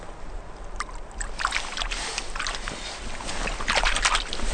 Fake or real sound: real